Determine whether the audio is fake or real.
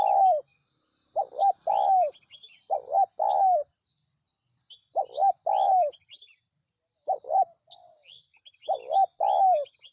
real